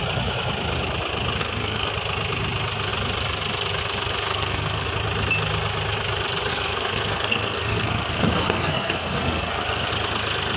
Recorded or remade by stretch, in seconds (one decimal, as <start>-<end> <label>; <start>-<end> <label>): 0.0-1.4 recorded; 1.4-1.9 remade; 1.9-4.3 recorded; 4.3-4.9 remade; 4.9-6.5 recorded; 6.5-9.9 remade; 9.9-10.6 recorded